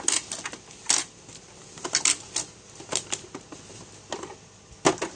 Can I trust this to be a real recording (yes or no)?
yes